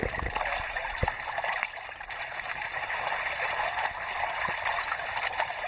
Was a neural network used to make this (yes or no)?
no